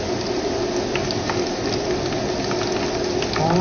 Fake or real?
real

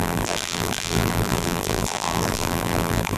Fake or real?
fake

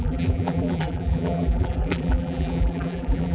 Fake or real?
fake